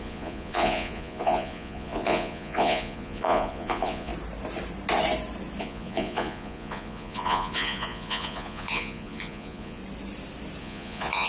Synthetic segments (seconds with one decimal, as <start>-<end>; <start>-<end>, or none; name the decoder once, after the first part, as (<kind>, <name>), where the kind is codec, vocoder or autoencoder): 0.0-4.1 (vocoder, Vocos); 5.6-9.8; 10.6-11.3